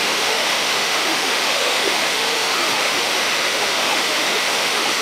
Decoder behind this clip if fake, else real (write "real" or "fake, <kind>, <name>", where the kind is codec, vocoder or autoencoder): fake, autoencoder, DAC-VAE